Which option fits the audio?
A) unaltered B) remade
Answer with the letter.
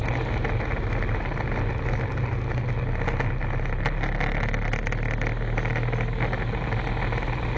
A